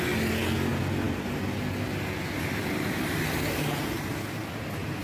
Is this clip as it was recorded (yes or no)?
yes